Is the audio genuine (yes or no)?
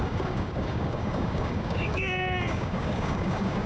no